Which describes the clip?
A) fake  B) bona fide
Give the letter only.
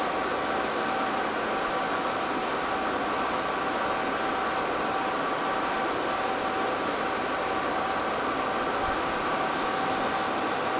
B